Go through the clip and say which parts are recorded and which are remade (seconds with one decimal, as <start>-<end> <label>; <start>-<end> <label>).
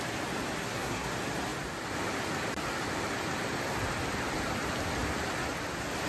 0.0-0.6 recorded; 0.6-1.1 remade; 1.1-6.1 recorded